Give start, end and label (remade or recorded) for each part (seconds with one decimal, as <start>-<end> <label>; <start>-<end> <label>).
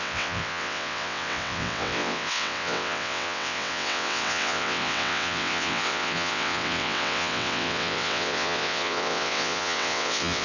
0.0-10.4 remade